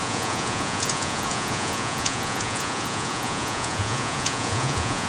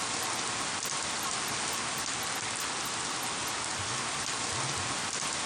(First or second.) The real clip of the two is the second